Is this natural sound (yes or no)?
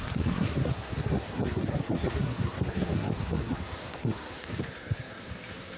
no